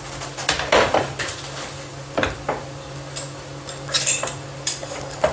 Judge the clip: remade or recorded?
remade